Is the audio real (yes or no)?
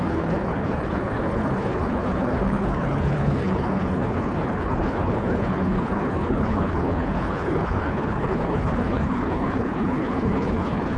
no